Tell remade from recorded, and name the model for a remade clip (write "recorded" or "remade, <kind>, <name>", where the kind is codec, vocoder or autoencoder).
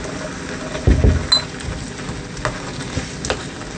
recorded